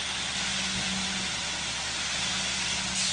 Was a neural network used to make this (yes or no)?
no